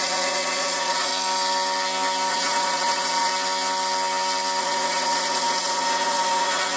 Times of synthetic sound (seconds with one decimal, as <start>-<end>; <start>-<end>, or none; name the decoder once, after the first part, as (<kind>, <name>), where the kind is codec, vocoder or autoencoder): 0.0-1.1 (vocoder, Vocos); 2.3-3.3; 4.6-6.8